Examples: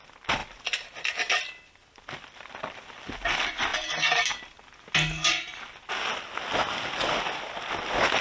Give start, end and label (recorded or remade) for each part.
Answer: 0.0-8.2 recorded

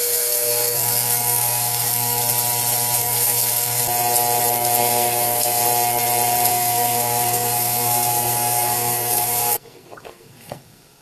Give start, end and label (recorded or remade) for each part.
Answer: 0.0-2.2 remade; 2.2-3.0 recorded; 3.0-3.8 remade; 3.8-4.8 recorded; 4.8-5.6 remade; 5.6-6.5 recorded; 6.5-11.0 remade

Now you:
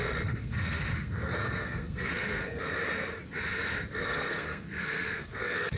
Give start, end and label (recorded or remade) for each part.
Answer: 0.0-2.7 remade; 2.7-3.9 recorded; 3.9-5.8 remade

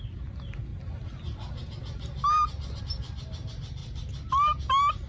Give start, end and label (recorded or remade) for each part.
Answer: 0.0-5.1 recorded

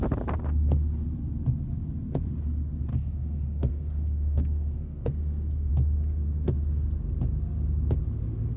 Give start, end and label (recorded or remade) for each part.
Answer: 0.0-2.9 recorded; 2.9-5.7 remade; 5.7-8.6 recorded

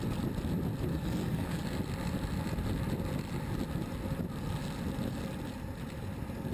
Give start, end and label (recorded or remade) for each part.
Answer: 0.0-0.9 recorded; 0.9-1.6 remade; 1.6-6.5 recorded

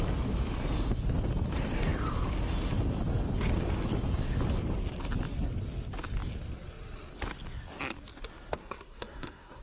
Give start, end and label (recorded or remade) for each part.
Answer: 0.0-8.6 recorded; 8.6-9.6 remade